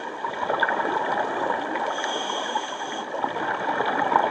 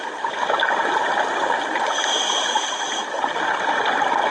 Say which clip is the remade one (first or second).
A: second